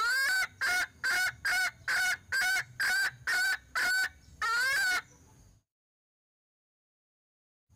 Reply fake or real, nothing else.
real